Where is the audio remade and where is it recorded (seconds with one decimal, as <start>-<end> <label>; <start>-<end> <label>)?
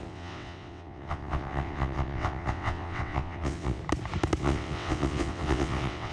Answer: 0.0-3.8 remade; 3.8-4.4 recorded; 4.4-6.1 remade